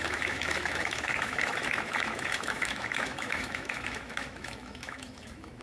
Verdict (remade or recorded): remade